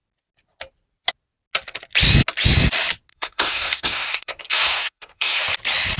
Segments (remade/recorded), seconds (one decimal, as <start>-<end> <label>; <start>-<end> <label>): 0.0-3.1 recorded; 3.1-5.4 remade; 5.4-6.0 recorded